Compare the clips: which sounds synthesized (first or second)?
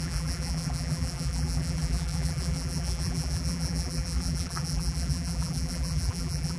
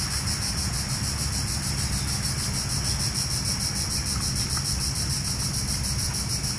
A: first